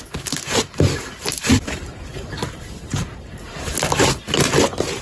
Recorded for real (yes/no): yes